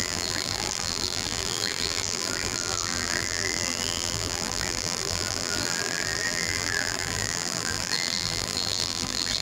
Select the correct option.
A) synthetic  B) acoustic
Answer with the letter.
A